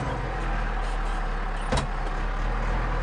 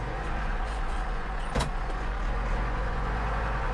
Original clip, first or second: first